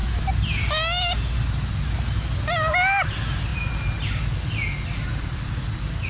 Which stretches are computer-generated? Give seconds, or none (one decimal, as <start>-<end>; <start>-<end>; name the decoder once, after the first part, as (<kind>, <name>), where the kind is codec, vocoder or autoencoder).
none